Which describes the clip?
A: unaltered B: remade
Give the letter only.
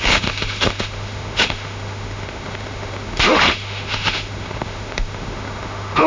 B